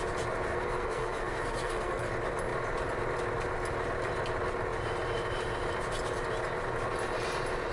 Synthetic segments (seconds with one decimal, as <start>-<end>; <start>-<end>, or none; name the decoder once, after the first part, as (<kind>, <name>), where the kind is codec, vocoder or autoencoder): 0.5-2.1 (codec, SNAC)